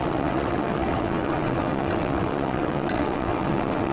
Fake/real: fake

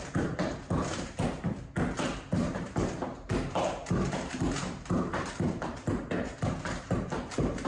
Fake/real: fake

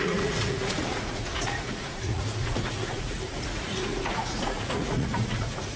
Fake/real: fake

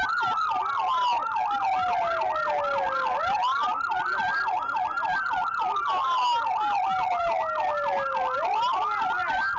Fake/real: real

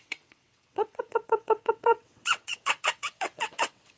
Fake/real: fake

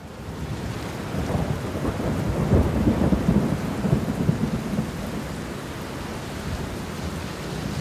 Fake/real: real